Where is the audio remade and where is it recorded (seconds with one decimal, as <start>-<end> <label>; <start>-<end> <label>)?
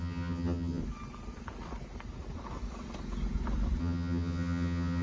0.0-0.8 remade; 0.8-3.8 recorded; 3.8-5.0 remade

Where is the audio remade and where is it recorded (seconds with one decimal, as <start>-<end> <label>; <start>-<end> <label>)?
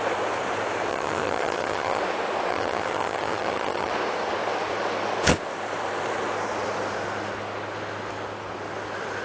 0.0-0.9 recorded; 0.9-2.0 remade; 2.0-2.5 recorded; 2.5-3.9 remade; 3.9-9.2 recorded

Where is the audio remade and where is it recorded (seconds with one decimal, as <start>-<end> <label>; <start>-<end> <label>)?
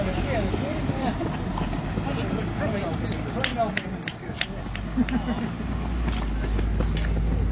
0.0-7.5 recorded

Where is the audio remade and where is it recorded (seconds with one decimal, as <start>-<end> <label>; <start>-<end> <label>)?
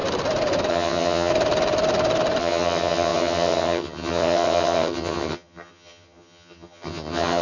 0.0-0.7 recorded; 0.7-1.3 remade; 1.3-2.4 recorded; 2.4-7.4 remade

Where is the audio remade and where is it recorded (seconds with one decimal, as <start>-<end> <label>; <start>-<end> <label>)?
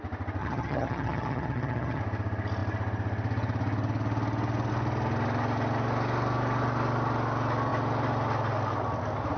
0.0-0.4 recorded; 0.4-2.0 remade; 2.0-9.4 recorded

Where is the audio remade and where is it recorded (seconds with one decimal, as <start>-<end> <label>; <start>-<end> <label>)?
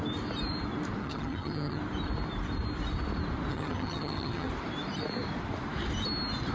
0.0-1.0 recorded; 1.0-1.8 remade; 1.8-3.5 recorded; 3.5-4.5 remade; 4.5-6.5 recorded